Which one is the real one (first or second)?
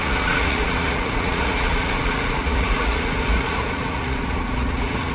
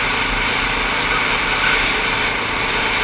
second